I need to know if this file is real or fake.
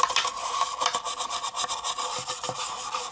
real